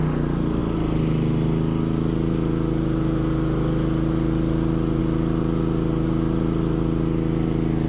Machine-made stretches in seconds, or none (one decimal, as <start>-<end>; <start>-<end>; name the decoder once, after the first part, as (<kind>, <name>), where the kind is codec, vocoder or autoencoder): none